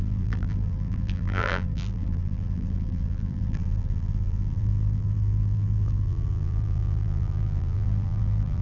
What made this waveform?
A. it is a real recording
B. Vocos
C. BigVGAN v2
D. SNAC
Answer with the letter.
C